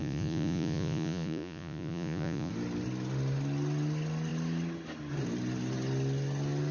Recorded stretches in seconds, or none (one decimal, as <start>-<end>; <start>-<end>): 2.5-6.7